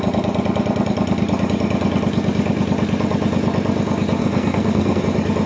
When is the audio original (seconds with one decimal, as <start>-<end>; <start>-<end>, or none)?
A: 0.0-4.2; 5.0-5.5